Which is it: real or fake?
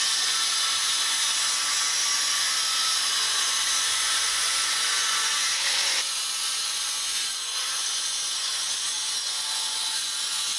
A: fake